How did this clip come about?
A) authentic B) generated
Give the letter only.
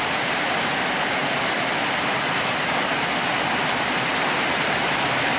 A